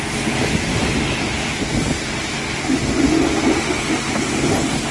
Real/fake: real